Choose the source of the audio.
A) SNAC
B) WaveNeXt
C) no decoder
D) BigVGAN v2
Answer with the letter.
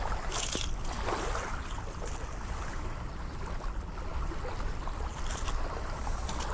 C